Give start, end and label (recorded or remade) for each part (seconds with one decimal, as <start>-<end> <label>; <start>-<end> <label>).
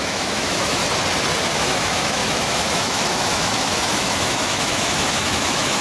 0.0-0.8 remade; 0.8-1.5 recorded; 1.5-5.8 remade